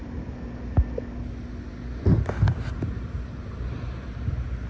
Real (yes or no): yes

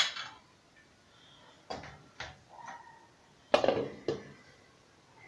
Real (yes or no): yes